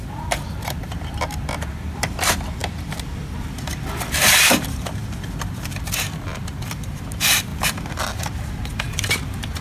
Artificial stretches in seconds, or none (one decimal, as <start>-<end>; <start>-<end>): 0.0-7.5; 8.0-9.6